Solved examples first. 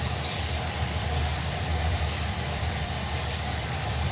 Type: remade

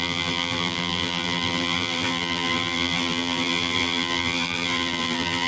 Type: remade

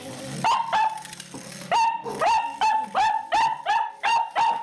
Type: recorded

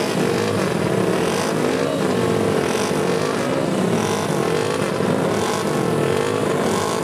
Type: recorded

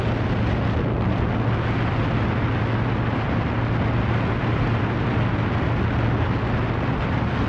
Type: recorded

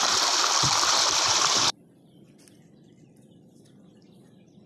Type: remade